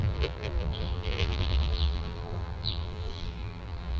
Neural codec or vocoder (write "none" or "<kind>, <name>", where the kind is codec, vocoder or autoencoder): vocoder, BigVGAN v2